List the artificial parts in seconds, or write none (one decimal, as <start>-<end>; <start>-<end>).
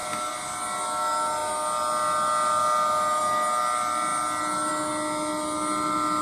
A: none